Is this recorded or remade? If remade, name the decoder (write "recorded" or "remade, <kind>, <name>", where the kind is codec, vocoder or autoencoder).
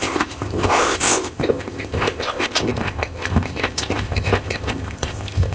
remade, codec, ZipCodec